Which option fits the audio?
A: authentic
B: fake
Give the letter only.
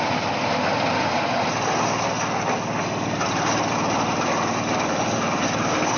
A